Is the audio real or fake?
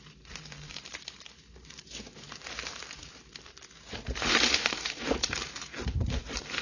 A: fake